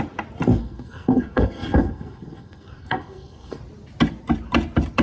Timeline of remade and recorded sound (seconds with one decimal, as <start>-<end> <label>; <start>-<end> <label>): 0.0-0.6 recorded; 0.6-3.6 remade; 3.6-5.0 recorded